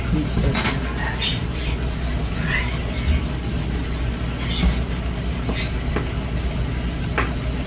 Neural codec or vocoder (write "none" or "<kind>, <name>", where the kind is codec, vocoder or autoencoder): none